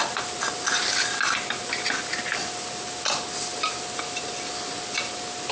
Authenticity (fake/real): real